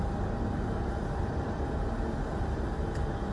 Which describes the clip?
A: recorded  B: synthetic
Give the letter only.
A